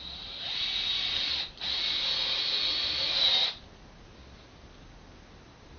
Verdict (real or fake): real